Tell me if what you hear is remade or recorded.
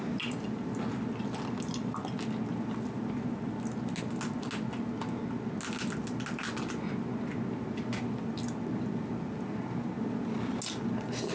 recorded